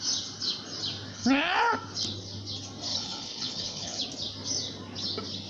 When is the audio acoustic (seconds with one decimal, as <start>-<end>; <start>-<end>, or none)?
0.0-1.1; 1.7-2.9; 4.0-5.5